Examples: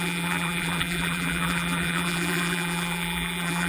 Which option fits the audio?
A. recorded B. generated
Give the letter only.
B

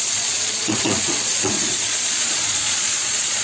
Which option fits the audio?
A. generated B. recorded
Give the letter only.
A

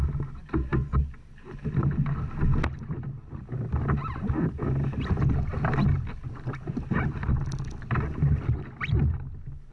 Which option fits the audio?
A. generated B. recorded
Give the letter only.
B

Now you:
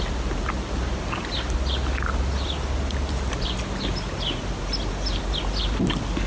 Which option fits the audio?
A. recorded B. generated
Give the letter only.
A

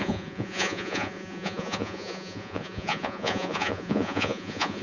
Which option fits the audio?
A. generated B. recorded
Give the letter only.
A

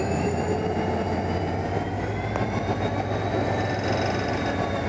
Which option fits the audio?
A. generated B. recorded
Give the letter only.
B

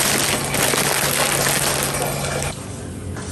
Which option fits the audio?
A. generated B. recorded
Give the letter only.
B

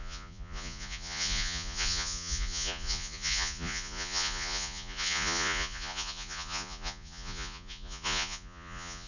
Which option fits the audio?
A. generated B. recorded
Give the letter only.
A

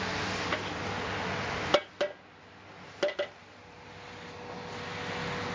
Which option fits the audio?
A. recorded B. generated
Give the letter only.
A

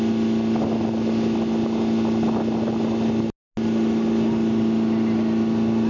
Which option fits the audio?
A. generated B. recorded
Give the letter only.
B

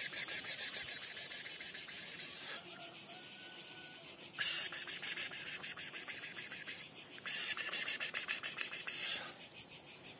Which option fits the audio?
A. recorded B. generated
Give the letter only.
B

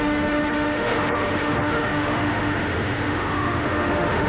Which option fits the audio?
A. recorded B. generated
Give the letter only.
B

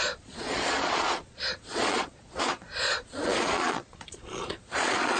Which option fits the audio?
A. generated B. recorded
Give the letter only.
A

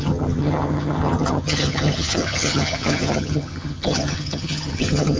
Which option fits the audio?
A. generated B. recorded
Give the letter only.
A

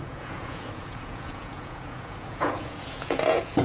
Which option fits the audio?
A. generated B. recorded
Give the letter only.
A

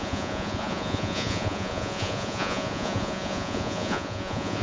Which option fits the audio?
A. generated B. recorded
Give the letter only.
A